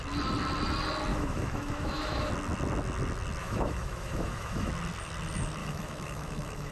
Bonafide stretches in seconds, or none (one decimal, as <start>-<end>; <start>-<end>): 0.0-1.1; 2.3-3.4; 4.7-5.6